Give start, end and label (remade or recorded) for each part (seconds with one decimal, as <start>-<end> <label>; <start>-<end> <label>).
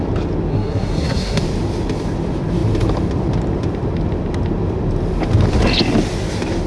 0.0-0.5 recorded; 0.5-1.4 remade; 1.4-6.7 recorded